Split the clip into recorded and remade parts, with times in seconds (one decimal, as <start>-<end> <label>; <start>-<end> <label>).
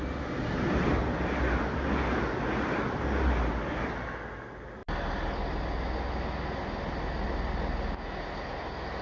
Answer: 0.0-9.0 recorded